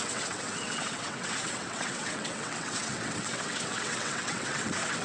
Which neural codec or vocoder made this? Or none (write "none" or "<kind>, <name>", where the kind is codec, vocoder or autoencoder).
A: vocoder, WaveNeXt